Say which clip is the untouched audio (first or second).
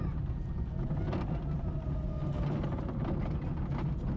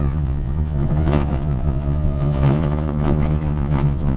first